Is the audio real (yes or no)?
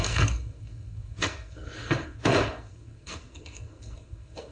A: no